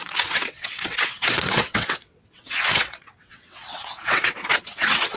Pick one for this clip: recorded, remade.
remade